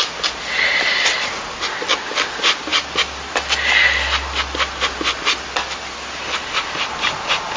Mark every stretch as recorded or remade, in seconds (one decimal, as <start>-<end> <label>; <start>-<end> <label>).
0.0-7.6 recorded

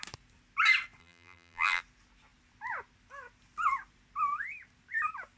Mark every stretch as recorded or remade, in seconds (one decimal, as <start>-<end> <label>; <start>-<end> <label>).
0.0-1.0 recorded; 1.0-1.8 remade; 1.8-5.4 recorded

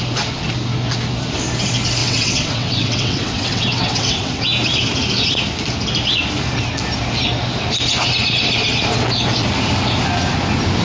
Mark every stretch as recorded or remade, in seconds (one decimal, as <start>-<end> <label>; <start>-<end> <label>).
0.0-2.0 recorded; 2.0-4.4 remade; 4.4-10.8 recorded

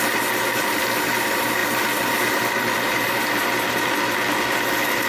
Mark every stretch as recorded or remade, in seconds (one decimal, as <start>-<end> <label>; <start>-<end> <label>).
0.0-5.1 recorded

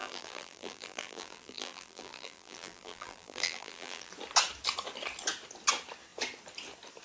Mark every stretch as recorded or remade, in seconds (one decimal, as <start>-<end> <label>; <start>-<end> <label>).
0.0-4.1 remade; 4.1-7.0 recorded

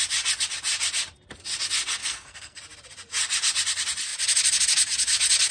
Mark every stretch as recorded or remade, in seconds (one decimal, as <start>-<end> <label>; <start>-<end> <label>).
0.0-2.0 recorded; 2.0-2.6 remade; 2.6-5.5 recorded